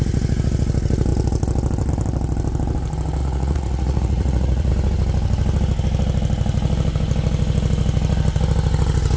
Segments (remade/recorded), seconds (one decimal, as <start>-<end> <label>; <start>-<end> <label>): 0.0-3.2 recorded; 3.2-4.7 remade; 4.7-9.2 recorded